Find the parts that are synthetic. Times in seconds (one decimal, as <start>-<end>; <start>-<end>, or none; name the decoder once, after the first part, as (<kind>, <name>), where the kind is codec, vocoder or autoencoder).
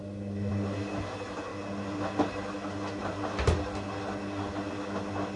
none